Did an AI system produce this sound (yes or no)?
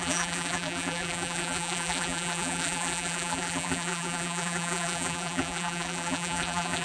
yes